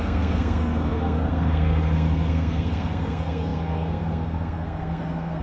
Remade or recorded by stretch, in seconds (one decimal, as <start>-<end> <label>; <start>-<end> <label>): 0.0-5.4 remade